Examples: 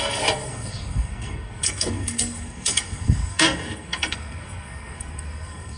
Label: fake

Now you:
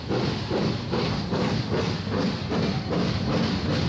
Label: real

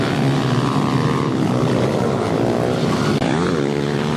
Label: real